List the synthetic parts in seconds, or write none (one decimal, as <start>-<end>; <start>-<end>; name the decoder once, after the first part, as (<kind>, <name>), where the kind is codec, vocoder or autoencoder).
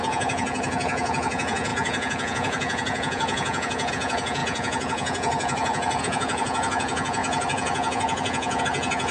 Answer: 0.0-9.1 (vocoder, Vocos)